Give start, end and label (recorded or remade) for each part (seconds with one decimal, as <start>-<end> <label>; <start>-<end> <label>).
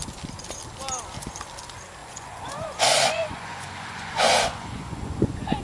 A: 0.0-2.0 recorded; 2.0-5.6 remade